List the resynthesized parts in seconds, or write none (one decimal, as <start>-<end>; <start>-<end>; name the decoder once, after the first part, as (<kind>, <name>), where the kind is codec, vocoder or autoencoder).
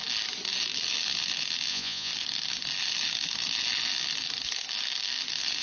1.7-2.1 (vocoder, Vocos)